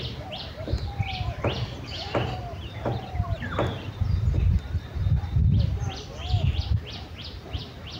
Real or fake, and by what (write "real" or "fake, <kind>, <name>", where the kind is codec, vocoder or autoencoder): fake, vocoder, BigVGAN v2